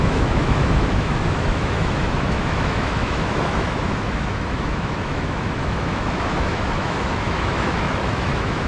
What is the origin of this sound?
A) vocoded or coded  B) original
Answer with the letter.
A